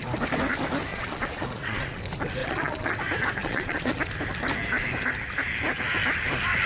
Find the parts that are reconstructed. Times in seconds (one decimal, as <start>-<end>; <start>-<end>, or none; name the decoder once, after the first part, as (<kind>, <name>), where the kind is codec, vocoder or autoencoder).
0.9-2.0 (vocoder, Vocos); 2.4-2.9; 3.4-4.0